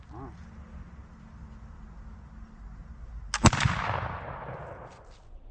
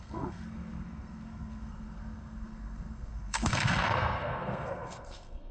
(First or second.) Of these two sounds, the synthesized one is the second